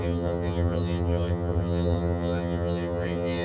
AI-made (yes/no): yes